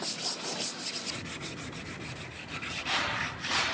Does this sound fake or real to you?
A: real